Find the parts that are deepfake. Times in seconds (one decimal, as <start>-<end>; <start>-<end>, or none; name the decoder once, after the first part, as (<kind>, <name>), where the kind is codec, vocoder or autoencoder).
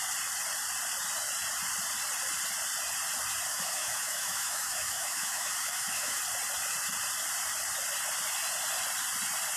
3.5-6.2 (autoencoder, DAC-VAE)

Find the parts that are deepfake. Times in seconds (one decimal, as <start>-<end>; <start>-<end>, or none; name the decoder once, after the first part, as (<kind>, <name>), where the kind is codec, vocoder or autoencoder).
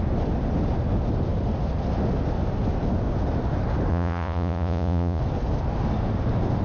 3.9-5.2 (vocoder, Vocos)